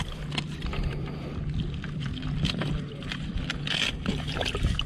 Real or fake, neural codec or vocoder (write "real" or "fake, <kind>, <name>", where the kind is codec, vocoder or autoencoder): fake, vocoder, BigVGAN v2